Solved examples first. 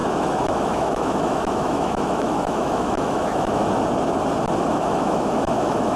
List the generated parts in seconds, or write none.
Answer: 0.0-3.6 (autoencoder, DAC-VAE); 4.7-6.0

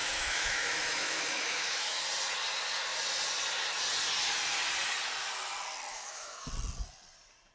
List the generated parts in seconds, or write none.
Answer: 0.0-2.0 (autoencoder, DAC-VAE); 5.9-6.5

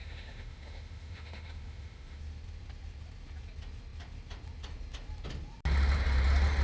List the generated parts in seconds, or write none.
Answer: 0.0-2.2 (autoencoder, DAC-VAE)

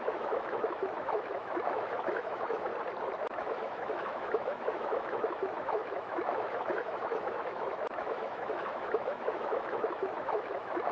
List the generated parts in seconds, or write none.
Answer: 0.0-2.7 (autoencoder, DAC-VAE); 3.2-10.9